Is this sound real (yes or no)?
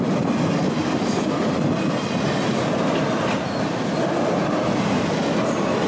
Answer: yes